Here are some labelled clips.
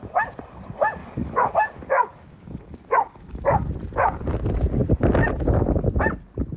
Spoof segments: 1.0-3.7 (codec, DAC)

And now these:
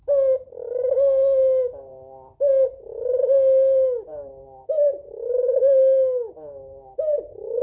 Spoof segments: 4.1-7.6 (codec, DAC)

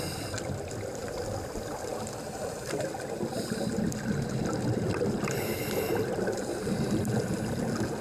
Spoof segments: none

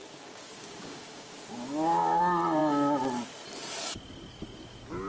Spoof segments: 0.0-2.2 (codec, DAC)